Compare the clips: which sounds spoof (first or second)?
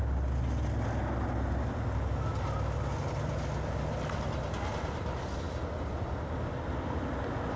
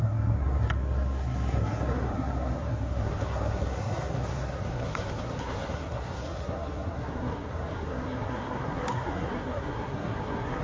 second